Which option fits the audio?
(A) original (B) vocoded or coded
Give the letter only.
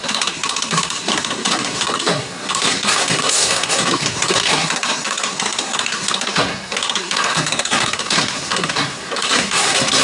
B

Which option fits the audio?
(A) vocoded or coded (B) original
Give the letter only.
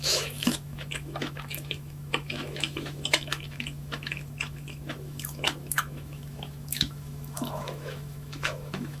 A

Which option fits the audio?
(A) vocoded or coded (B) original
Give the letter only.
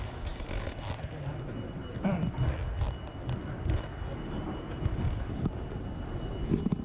B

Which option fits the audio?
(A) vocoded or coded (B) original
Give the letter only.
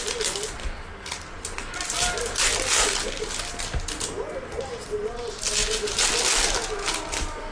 B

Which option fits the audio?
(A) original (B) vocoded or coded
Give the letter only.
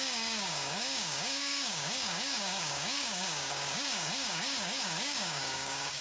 B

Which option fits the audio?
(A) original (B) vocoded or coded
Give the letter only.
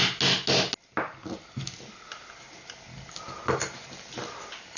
A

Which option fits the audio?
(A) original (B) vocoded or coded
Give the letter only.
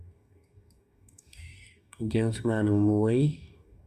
B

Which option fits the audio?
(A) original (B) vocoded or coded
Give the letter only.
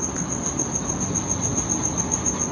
A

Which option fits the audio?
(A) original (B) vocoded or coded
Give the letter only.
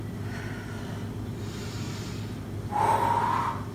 A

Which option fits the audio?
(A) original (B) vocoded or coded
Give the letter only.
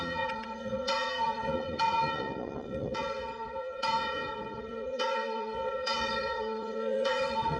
B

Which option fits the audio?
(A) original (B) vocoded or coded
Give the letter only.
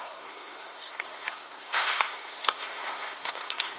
B